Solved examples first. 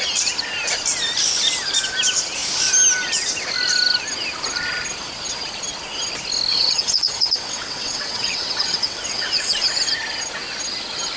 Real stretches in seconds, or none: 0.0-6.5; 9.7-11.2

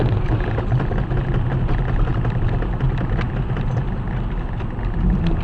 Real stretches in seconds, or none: 0.0-5.4